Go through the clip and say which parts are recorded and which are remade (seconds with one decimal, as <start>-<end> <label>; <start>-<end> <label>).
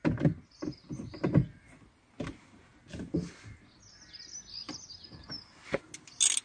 0.0-6.4 recorded